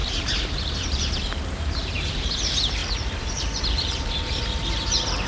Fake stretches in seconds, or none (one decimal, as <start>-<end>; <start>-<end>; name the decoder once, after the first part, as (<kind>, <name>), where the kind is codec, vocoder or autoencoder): 0.0-5.3 (vocoder, BigVGAN v2)